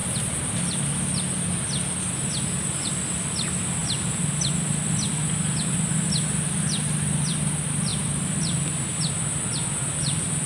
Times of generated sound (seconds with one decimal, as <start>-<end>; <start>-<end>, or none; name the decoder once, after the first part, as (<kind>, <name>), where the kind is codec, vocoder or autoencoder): 3.8-4.4 (vocoder, BigVGAN v2); 7.9-9.1